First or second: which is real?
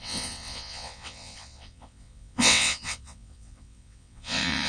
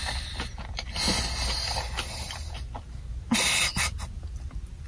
second